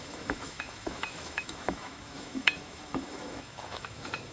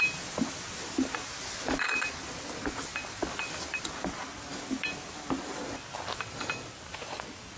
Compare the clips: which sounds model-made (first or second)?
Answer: first